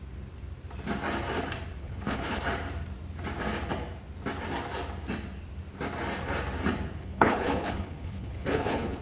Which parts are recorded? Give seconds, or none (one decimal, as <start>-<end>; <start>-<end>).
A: 0.0-1.8; 2.4-7.0